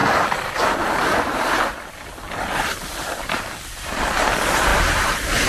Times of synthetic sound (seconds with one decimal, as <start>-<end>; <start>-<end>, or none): 2.6-4.7